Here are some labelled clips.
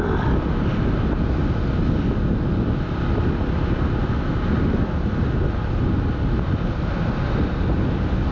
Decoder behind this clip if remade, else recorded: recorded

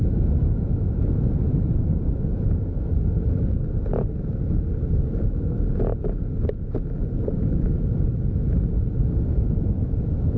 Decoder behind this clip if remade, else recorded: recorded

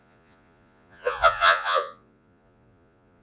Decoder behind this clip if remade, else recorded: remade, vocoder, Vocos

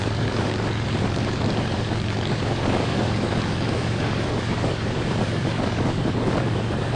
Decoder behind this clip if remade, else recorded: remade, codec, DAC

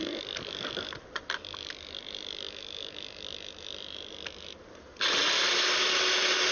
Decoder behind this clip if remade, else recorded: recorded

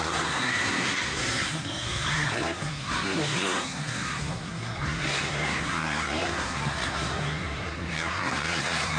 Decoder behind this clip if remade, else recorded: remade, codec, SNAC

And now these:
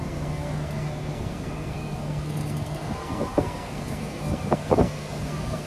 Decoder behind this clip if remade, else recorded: remade, codec, SNAC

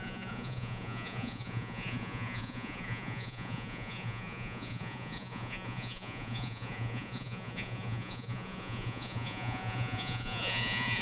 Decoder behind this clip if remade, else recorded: remade, vocoder, Vocos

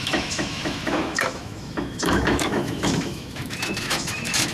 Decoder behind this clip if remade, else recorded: remade, autoencoder, DAC-VAE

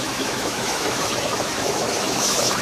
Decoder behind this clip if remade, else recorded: remade, autoencoder, DAC-VAE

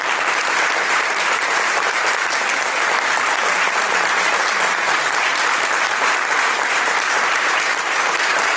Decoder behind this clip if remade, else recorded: remade, vocoder, BigVGAN v2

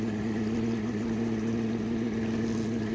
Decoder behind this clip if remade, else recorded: recorded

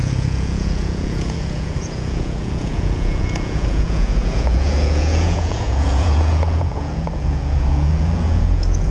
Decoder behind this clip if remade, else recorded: remade, vocoder, Vocos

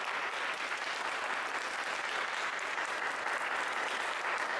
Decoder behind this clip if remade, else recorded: recorded